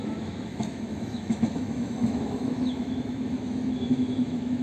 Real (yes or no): no